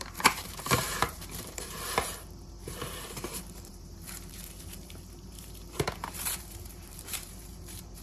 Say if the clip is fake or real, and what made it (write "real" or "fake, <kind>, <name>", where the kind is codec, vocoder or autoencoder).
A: fake, vocoder, BigVGAN v2